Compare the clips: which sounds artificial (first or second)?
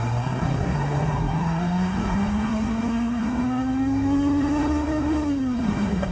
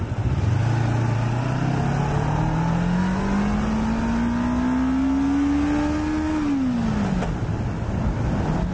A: first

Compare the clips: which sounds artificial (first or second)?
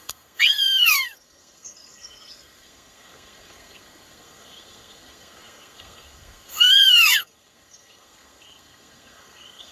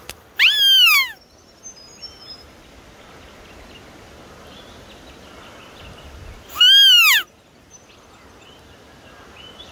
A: first